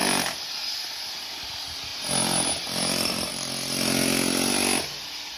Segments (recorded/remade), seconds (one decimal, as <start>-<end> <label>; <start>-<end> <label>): 0.0-5.4 recorded